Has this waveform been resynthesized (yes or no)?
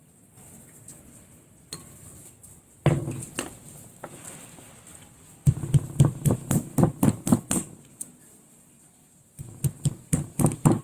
no